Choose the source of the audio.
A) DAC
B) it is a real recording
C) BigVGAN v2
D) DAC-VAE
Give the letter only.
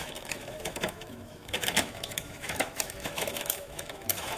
D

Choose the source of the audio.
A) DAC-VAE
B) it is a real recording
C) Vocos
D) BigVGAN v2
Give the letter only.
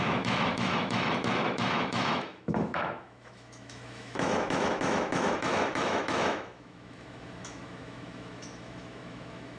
A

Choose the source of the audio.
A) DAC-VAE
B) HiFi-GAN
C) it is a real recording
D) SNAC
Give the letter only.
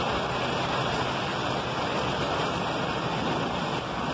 C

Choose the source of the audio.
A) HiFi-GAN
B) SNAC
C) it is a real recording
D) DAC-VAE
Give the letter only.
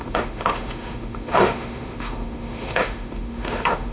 D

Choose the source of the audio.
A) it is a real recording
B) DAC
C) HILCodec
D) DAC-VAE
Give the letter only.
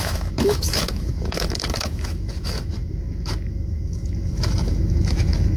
D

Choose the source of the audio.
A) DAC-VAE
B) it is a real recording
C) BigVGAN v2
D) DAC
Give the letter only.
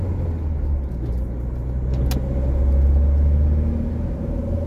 B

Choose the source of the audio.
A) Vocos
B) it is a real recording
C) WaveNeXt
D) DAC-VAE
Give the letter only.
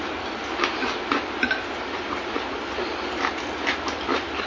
B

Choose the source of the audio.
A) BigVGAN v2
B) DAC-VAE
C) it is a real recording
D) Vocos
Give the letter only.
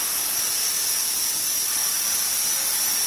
C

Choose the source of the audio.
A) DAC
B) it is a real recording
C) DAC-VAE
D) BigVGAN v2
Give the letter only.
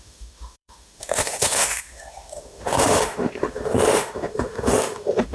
C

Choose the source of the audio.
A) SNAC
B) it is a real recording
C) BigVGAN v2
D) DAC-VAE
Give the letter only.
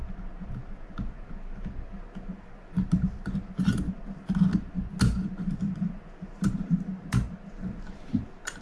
B